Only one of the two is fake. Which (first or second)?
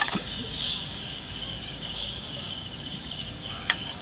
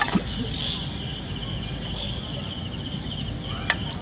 first